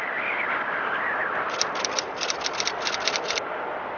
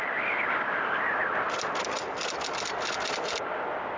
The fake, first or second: first